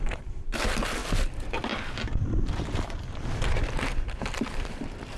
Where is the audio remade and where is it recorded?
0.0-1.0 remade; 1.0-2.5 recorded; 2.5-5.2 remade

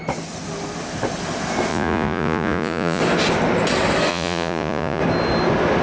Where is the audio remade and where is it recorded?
0.0-1.7 recorded; 1.7-3.0 remade; 3.0-4.1 recorded; 4.1-5.0 remade; 5.0-5.8 recorded